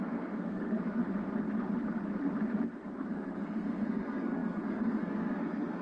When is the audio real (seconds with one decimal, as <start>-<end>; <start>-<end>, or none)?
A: 1.0-2.9